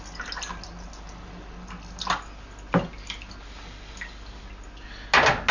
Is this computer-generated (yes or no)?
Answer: no